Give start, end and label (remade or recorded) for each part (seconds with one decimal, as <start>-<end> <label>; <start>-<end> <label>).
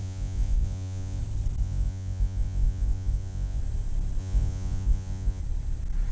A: 0.0-1.2 remade; 1.2-1.6 recorded; 1.6-3.6 remade; 3.6-4.2 recorded; 4.2-5.4 remade; 5.4-6.1 recorded